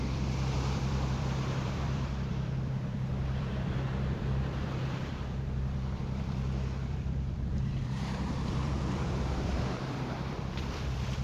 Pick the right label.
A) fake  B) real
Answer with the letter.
A